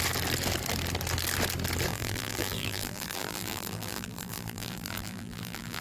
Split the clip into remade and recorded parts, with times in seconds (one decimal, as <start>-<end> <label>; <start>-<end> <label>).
0.0-1.9 recorded; 1.9-5.8 remade